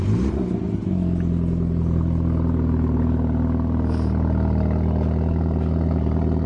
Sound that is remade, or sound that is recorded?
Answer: recorded